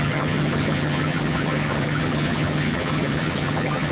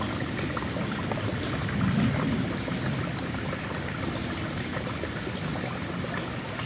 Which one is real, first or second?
second